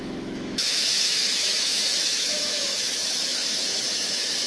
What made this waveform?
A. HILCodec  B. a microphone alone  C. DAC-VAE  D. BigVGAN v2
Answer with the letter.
C